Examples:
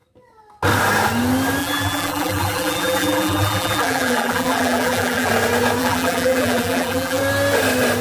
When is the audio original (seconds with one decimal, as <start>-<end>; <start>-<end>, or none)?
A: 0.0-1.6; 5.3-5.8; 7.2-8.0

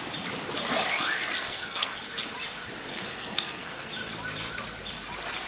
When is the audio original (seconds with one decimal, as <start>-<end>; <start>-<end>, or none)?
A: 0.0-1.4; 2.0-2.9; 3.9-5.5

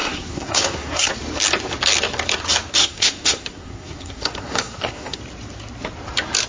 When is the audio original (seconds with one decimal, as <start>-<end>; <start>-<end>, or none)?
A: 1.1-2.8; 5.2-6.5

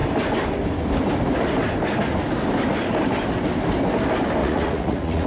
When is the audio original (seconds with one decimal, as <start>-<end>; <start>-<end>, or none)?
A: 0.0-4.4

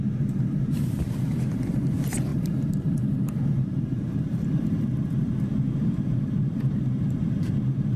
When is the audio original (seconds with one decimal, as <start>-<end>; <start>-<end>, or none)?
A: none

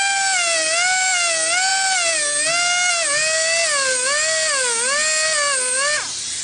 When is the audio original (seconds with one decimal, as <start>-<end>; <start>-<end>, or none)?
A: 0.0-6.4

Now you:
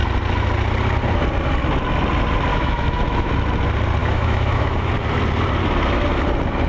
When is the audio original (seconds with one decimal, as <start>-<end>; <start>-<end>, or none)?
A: 0.0-2.5; 3.3-4.0; 4.9-6.7